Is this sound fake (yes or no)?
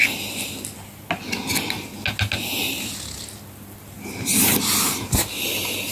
no